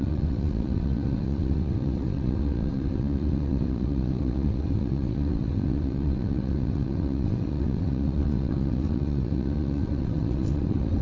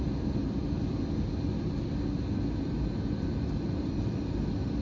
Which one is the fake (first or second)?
first